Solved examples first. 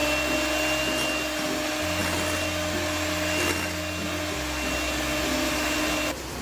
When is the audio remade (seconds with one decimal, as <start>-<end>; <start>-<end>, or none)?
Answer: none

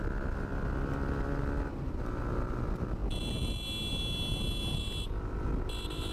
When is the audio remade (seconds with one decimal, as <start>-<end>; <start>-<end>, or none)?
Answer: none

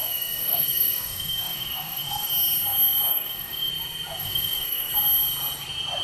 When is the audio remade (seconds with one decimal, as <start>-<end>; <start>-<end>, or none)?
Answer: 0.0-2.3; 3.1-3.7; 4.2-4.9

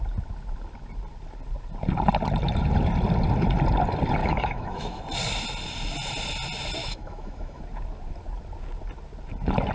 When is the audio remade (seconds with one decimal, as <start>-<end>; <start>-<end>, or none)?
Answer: 4.2-5.0; 6.8-7.6